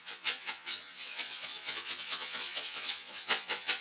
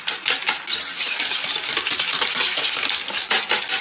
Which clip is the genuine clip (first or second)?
second